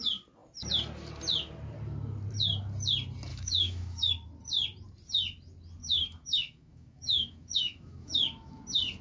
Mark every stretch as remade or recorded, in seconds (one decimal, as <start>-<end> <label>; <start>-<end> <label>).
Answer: 0.0-3.3 recorded; 3.3-4.1 remade; 4.1-5.8 recorded; 5.8-8.6 remade; 8.6-9.0 recorded